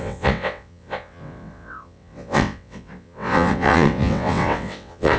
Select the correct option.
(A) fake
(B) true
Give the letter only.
A